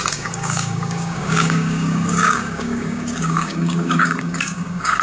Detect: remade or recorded remade